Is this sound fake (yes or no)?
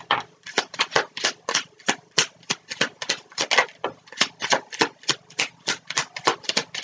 no